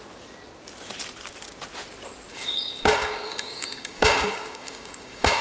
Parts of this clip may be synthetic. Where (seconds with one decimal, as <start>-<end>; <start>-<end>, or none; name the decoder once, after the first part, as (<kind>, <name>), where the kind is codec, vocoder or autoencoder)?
2.3-5.4 (codec, DAC)